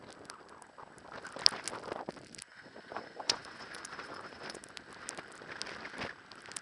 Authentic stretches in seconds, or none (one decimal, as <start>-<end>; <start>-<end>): 0.0-2.5; 4.6-6.6